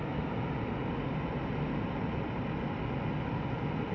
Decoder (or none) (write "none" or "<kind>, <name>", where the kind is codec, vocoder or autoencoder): none